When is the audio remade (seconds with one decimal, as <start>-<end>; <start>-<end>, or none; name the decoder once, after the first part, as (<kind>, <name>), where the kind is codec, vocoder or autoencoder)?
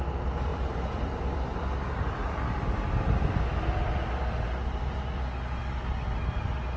0.5-4.3 (vocoder, BigVGAN v2)